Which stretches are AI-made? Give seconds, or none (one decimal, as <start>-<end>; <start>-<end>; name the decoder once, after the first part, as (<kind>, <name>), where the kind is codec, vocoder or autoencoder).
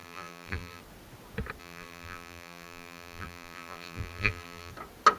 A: 0.0-0.8 (vocoder, BigVGAN v2); 1.6-4.7